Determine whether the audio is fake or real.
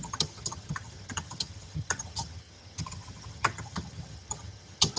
fake